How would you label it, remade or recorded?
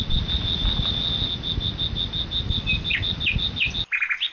recorded